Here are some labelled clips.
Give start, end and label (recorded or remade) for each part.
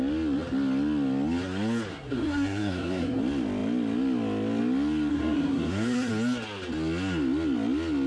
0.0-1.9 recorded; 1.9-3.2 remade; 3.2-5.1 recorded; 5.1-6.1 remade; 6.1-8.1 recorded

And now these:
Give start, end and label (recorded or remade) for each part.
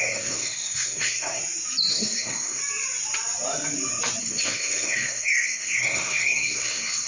0.0-1.4 remade; 1.4-1.9 recorded; 1.9-2.6 remade; 2.6-4.2 recorded; 4.2-7.1 remade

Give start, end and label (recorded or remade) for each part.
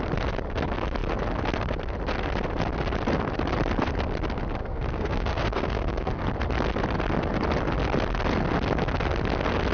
0.0-4.6 recorded; 4.6-6.2 remade; 6.2-9.7 recorded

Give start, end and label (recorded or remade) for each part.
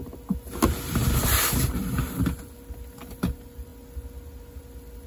0.0-5.1 recorded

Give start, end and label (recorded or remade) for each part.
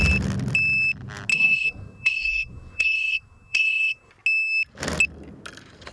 0.0-1.3 recorded; 1.3-4.1 remade; 4.1-5.9 recorded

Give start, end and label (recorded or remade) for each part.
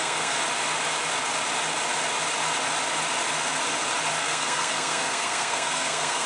0.0-0.4 remade; 0.4-4.2 recorded; 4.2-6.3 remade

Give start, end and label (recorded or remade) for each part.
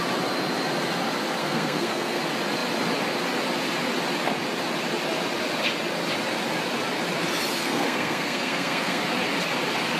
0.0-1.4 recorded; 1.4-2.2 remade; 2.2-7.6 recorded; 7.6-9.0 remade; 9.0-10.0 recorded